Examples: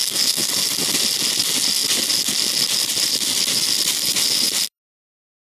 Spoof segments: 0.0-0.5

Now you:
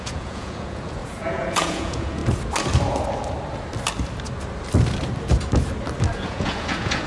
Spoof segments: 0.0-2.2; 6.3-7.1

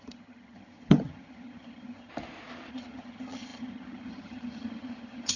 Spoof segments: 0.0-2.1; 2.7-5.4

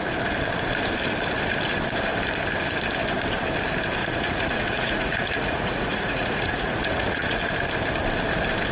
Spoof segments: 4.0-7.4

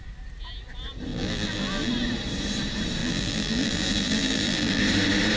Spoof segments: 1.1-1.9; 3.0-4.8